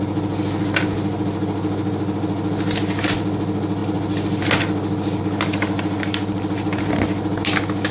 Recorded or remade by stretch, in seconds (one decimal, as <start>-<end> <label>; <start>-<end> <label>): 0.0-7.9 recorded

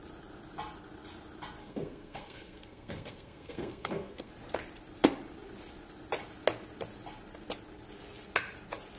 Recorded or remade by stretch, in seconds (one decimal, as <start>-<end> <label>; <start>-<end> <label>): 0.0-1.6 recorded; 1.6-4.3 remade; 4.3-9.0 recorded

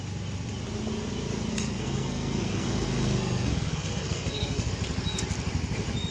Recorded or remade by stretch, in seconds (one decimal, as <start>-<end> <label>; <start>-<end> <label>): 0.0-1.5 recorded; 1.5-4.7 remade; 4.7-6.1 recorded

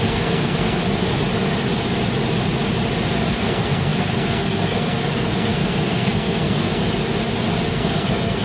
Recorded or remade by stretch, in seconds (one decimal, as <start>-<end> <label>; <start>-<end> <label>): 0.0-0.8 remade; 0.8-3.3 recorded; 3.3-6.8 remade; 6.8-7.7 recorded; 7.7-8.4 remade

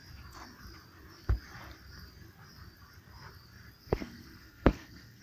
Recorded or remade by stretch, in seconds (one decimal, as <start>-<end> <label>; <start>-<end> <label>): 0.0-3.8 recorded; 3.8-5.2 remade

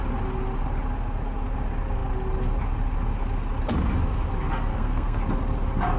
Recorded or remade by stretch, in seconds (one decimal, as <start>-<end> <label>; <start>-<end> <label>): 0.0-4.7 recorded; 4.7-5.2 remade; 5.2-6.0 recorded

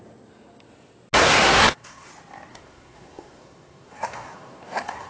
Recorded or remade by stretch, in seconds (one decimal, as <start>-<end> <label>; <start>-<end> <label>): 0.0-1.2 recorded; 1.2-2.1 remade; 2.1-2.5 recorded; 2.5-5.1 remade

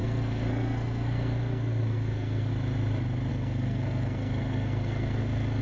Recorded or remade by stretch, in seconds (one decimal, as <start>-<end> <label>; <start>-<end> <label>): 0.0-2.5 remade; 2.5-3.3 recorded; 3.3-5.6 remade